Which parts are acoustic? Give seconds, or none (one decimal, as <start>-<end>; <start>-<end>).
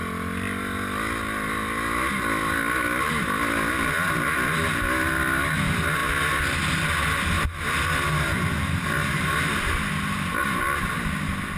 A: 0.0-11.6